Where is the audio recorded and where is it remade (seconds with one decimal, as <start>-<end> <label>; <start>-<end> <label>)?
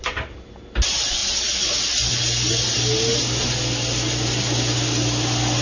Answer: 0.0-5.6 recorded